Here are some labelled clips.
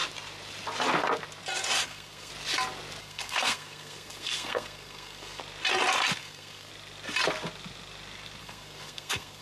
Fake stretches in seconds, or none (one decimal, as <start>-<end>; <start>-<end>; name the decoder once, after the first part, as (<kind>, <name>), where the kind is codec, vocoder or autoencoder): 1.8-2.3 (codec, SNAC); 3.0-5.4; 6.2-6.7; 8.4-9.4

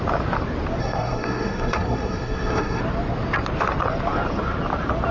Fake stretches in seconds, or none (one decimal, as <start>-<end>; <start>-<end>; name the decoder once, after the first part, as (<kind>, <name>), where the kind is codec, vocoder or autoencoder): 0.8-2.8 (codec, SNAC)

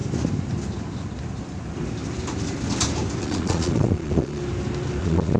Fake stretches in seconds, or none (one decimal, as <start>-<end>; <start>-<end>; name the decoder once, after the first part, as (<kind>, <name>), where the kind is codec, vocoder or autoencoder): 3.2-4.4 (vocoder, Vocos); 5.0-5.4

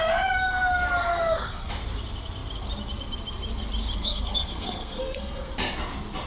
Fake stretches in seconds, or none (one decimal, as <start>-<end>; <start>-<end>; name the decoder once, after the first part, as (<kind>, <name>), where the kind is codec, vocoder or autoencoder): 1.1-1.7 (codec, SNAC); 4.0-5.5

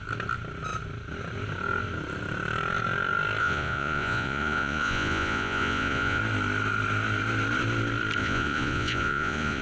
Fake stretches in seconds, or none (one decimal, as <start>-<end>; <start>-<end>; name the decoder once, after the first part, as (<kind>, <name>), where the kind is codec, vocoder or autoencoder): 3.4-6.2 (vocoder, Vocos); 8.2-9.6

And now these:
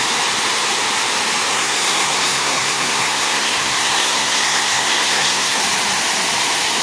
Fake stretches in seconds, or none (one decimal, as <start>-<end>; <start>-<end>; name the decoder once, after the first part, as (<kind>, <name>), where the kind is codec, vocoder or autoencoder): 1.5-5.6 (codec, SNAC)